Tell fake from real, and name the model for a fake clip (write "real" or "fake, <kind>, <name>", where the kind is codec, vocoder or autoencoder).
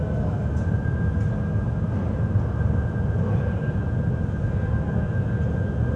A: real